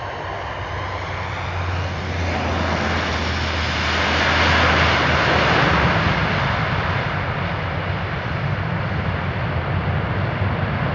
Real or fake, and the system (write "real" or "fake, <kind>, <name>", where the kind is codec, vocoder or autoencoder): real